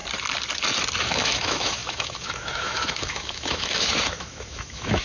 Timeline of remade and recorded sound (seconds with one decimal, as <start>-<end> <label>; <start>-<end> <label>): 0.0-1.0 recorded; 1.0-5.0 remade